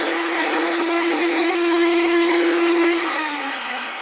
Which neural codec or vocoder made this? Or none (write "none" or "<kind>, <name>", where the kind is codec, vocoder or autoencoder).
codec, SNAC